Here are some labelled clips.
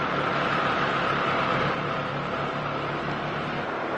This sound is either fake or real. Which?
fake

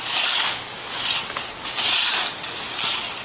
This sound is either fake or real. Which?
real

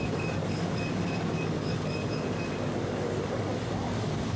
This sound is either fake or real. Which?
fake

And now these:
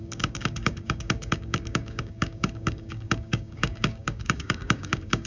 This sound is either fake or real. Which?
fake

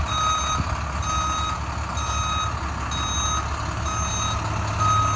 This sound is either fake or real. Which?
real